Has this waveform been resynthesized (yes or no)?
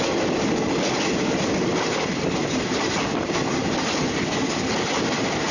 no